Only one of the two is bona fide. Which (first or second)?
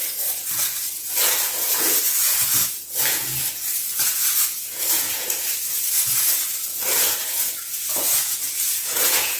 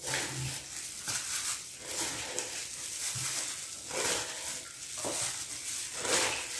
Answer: second